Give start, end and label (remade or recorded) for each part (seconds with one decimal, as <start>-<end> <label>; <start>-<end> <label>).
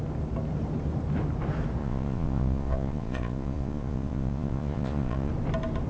0.0-1.8 recorded; 1.8-5.3 remade; 5.3-5.9 recorded